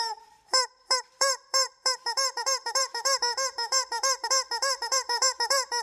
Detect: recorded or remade remade